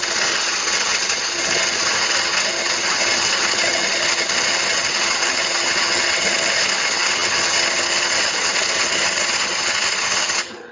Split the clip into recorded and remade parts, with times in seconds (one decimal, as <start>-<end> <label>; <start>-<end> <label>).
0.0-10.7 remade